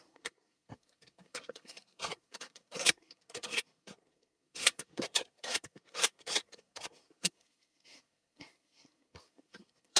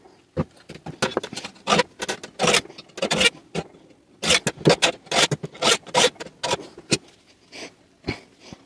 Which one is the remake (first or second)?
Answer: first